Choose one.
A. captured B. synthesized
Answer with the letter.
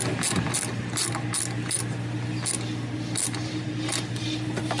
A